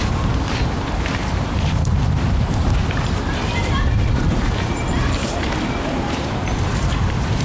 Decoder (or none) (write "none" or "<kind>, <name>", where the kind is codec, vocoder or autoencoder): vocoder, BigVGAN v2